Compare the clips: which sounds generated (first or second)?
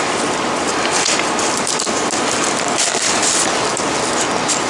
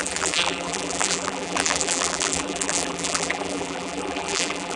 second